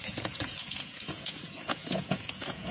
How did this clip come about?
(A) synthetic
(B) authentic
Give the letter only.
A